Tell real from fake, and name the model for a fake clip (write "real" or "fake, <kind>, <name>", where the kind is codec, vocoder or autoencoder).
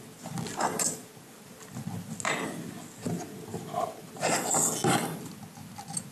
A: real